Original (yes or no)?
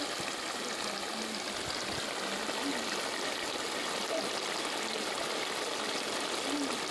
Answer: yes